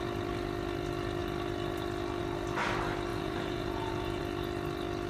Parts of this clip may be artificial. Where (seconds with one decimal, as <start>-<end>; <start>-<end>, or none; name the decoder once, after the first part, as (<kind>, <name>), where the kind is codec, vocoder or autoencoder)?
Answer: 3.1-4.2 (vocoder, Vocos)